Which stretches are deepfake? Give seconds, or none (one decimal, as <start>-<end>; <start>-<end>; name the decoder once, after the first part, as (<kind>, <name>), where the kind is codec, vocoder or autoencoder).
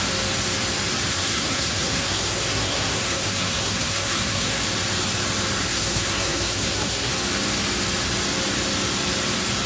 1.1-4.6 (codec, SNAC); 5.7-7.1